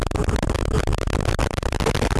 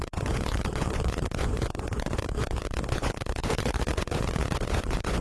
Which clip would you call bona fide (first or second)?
first